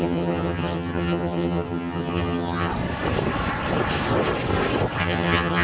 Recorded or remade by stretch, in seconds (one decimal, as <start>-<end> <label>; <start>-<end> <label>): 0.0-2.7 remade; 2.7-5.0 recorded; 5.0-5.6 remade